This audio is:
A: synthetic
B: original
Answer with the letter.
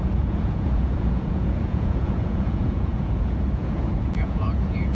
A